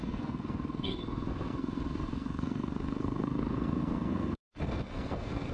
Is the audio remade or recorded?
remade